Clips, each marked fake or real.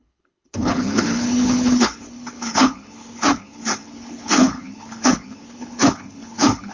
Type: fake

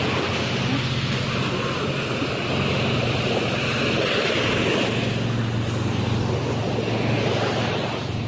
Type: real